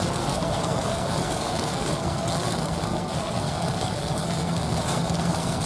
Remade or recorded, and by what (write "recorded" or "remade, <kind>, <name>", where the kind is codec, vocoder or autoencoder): remade, codec, SNAC